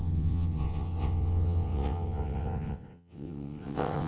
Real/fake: fake